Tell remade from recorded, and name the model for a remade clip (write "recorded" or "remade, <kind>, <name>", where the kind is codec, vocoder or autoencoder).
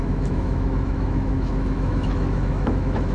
remade, autoencoder, DAC-VAE